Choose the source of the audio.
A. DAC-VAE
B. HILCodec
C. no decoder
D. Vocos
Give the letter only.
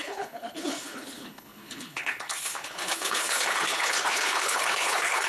B